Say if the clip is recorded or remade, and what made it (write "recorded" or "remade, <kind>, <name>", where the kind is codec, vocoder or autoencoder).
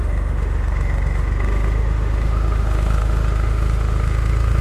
remade, autoencoder, DAC-VAE